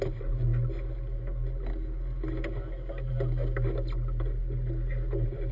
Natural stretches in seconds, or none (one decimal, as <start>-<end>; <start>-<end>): 0.0-5.5

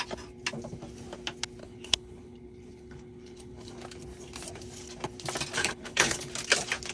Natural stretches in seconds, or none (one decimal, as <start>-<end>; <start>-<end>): 0.0-1.6; 3.7-5.6; 6.3-6.9

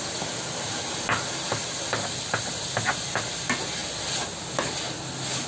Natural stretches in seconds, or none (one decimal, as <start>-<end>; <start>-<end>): 0.0-5.5

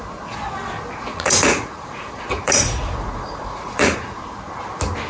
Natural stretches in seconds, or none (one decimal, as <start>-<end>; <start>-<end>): 0.0-1.1; 4.2-5.1